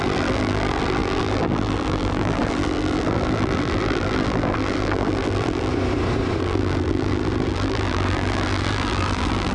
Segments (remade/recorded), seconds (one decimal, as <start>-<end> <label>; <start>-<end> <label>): 0.0-5.7 remade; 5.7-6.4 recorded; 6.4-9.5 remade